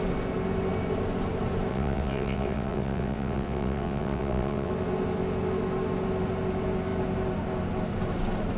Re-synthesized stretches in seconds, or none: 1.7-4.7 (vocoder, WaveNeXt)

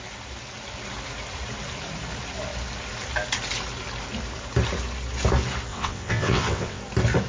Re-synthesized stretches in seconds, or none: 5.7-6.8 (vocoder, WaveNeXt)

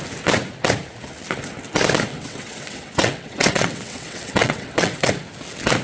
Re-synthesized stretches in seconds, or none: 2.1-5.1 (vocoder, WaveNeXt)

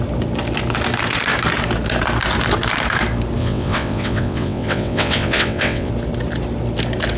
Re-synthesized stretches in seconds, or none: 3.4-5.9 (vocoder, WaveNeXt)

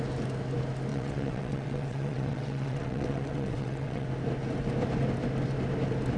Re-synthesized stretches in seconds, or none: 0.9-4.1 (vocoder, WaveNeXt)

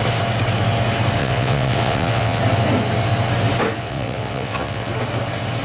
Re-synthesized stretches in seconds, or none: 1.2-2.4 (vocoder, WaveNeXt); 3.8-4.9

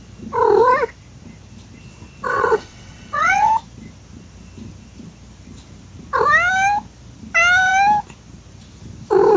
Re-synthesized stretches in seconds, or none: 2.3-3.5 (vocoder, WaveNeXt)

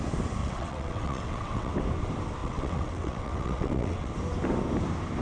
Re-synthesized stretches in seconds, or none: 0.4-1.7 (vocoder, WaveNeXt); 2.4-4.1